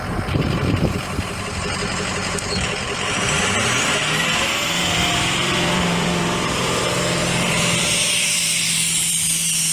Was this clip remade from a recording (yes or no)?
yes